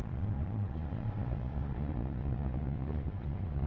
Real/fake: fake